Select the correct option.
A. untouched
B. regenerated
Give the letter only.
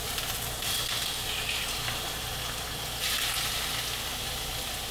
A